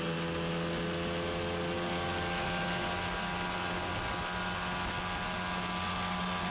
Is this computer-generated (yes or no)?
no